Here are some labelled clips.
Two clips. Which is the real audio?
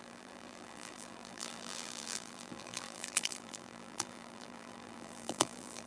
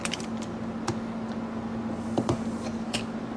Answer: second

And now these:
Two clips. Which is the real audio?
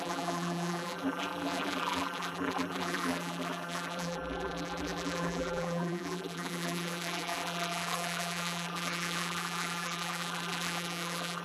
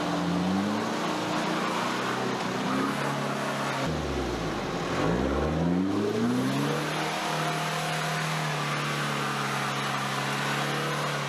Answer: second